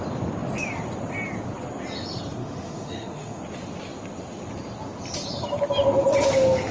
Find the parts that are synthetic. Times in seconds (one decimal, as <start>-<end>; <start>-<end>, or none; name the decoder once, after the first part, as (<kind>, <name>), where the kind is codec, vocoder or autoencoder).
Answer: 2.4-3.4 (autoencoder, DAC-VAE)